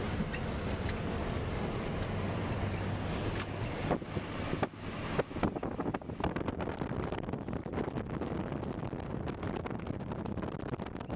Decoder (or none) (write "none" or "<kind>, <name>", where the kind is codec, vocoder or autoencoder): none